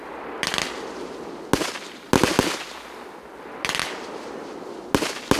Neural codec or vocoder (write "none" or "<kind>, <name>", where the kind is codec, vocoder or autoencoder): none